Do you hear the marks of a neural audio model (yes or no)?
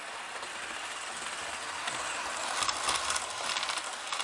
no